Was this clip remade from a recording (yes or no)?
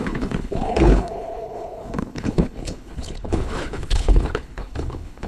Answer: yes